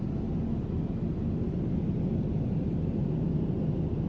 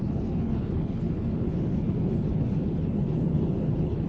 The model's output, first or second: second